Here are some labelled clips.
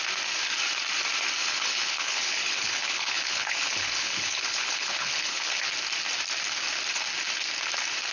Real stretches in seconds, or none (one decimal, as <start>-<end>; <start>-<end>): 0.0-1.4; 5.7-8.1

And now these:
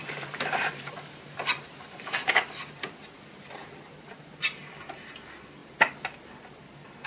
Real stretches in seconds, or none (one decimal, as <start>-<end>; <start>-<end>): 2.4-3.0; 4.2-7.1

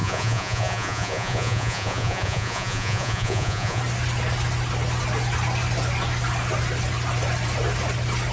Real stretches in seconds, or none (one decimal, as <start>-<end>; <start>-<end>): 3.8-8.3

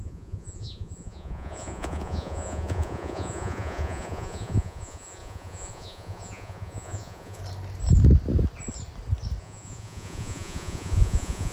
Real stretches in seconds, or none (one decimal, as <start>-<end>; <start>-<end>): 7.4-9.4

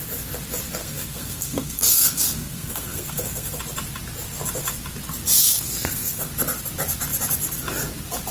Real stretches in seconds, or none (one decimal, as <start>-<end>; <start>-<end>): 0.0-0.8; 3.6-5.4; 6.3-8.3

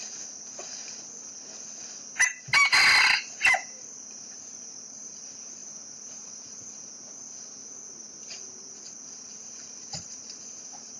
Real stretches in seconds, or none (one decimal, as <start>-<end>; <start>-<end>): 0.0-3.5

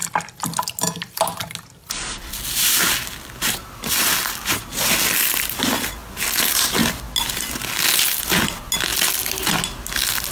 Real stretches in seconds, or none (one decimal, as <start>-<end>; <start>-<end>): 0.0-10.3

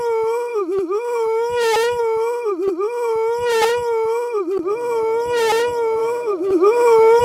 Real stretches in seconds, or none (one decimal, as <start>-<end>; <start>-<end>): 0.0-0.5; 2.0-6.0